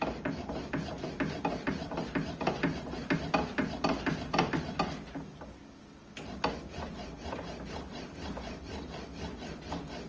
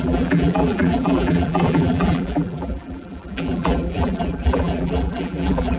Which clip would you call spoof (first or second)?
second